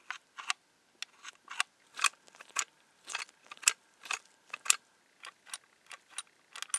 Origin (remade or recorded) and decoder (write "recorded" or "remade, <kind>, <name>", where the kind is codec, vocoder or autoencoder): recorded